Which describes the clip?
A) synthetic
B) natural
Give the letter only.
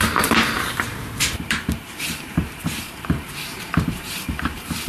A